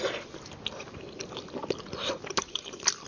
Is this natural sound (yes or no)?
yes